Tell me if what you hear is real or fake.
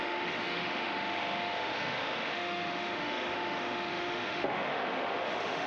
fake